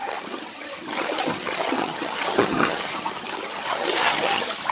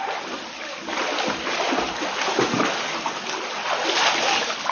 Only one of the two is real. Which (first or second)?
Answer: second